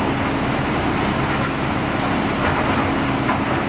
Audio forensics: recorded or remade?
recorded